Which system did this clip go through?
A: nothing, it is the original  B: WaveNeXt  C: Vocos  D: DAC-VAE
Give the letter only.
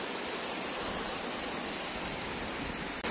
A